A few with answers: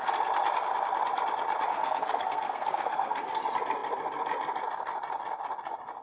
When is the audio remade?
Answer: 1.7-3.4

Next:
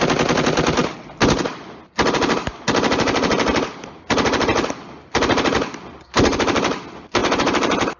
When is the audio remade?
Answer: none

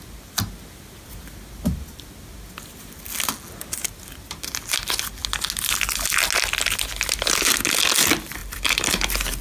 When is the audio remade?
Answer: 8.4-9.4

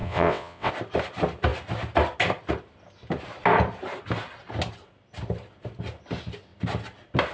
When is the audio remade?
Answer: 0.0-0.7